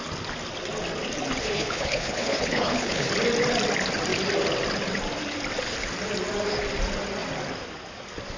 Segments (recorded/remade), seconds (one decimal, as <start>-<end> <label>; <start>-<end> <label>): 0.0-1.4 recorded; 1.4-3.1 remade; 3.1-8.4 recorded